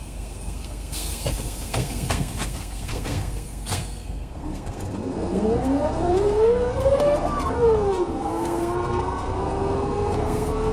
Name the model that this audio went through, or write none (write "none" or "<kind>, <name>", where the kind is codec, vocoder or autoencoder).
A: codec, SNAC